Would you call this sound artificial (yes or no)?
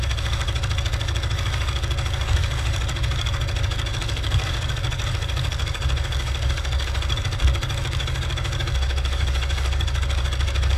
yes